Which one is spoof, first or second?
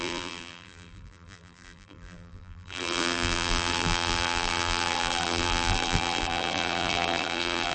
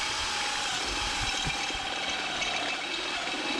first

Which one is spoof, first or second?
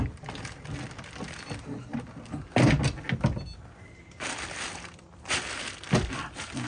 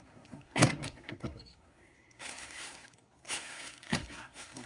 second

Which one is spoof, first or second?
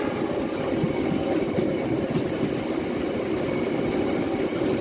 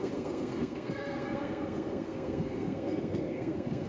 second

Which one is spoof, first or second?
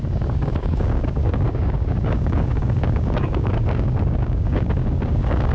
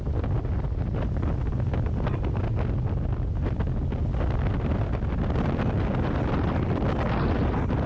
first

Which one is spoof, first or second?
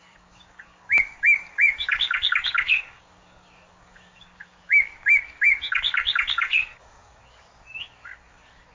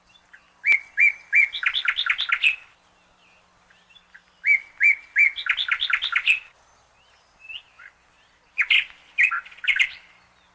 first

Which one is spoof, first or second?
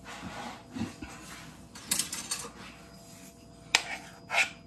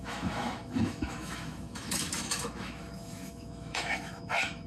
second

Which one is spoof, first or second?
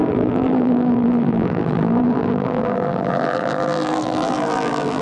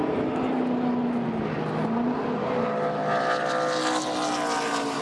first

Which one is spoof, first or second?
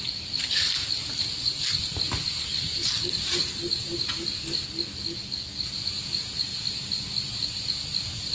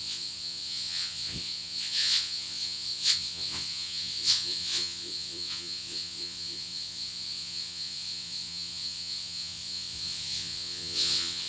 second